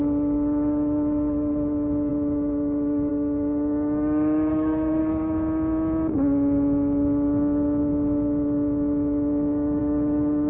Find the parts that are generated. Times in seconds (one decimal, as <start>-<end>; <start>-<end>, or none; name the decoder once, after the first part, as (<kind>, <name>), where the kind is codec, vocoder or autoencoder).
0.0-5.0 (autoencoder, DAC-VAE); 9.8-10.5